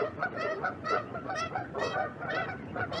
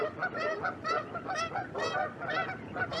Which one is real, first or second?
second